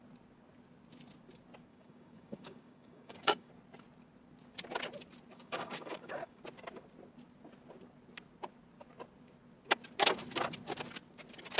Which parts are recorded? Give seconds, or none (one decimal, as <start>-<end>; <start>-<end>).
0.0-1.7; 3.5-5.3; 6.4-11.6